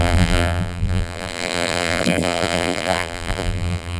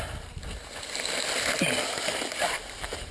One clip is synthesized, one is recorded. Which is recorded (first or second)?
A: second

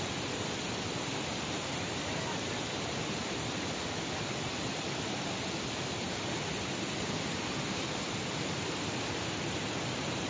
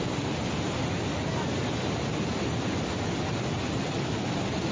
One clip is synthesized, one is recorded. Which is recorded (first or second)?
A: second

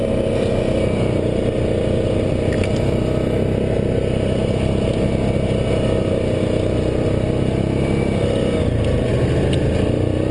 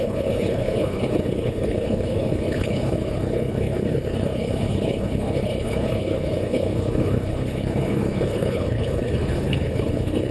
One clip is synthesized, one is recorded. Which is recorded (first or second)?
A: first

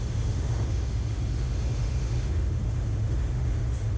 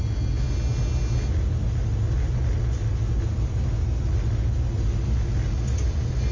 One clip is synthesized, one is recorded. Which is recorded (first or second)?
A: second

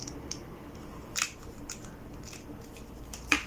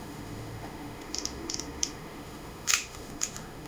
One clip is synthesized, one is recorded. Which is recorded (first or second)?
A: first